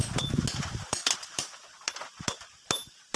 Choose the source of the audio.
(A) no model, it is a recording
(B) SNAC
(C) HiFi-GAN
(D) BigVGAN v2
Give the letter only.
A